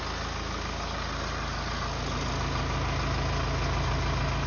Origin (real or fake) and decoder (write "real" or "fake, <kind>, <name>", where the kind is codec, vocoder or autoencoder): real